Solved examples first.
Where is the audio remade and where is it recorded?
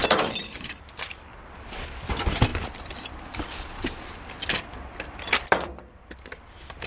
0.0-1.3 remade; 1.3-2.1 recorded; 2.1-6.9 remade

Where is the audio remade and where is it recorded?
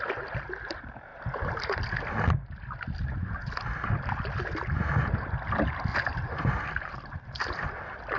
0.0-5.9 recorded; 5.9-6.9 remade; 6.9-8.2 recorded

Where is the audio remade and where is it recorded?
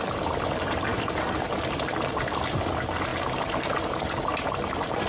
0.0-3.1 remade; 3.1-3.7 recorded; 3.7-4.3 remade; 4.3-5.1 recorded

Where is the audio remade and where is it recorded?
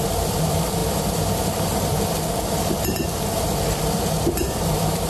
0.0-5.1 remade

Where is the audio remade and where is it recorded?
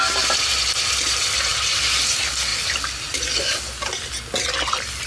0.0-1.5 recorded; 1.5-2.0 remade; 2.0-5.1 recorded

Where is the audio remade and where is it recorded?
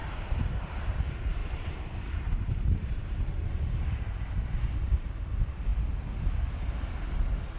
0.0-0.9 remade; 0.9-1.4 recorded; 1.4-5.3 remade; 5.3-7.6 recorded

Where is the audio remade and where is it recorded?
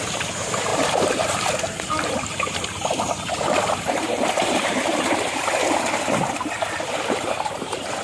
0.0-0.7 remade; 0.7-3.9 recorded; 3.9-5.6 remade; 5.6-6.1 recorded; 6.1-8.0 remade